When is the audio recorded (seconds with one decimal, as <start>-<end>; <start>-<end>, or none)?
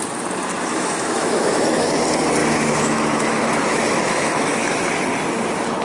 0.0-0.7; 1.9-2.4; 4.9-5.8